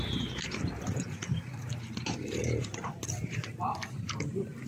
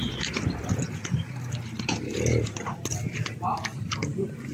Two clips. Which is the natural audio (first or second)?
second